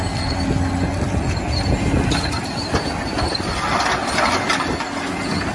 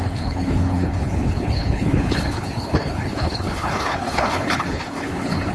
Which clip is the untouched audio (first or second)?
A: first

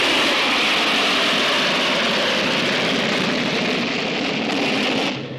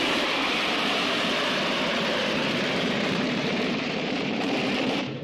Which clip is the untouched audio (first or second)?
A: first